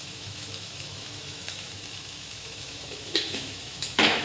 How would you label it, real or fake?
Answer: fake